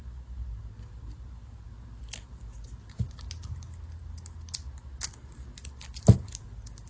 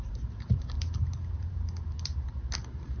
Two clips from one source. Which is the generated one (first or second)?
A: second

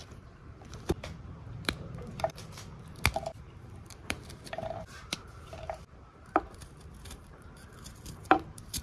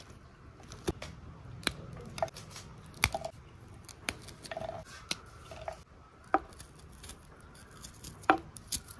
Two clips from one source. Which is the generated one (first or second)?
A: first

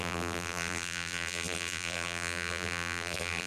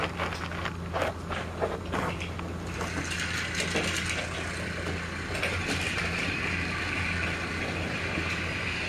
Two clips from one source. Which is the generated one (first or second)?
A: first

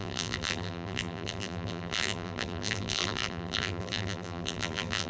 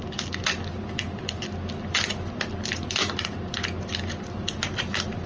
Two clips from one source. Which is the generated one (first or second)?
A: first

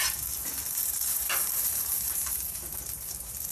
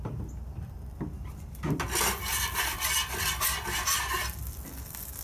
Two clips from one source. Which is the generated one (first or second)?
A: first